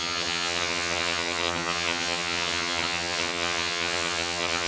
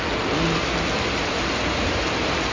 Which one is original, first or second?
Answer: second